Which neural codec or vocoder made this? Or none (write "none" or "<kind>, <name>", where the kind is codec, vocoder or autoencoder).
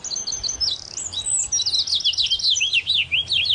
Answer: none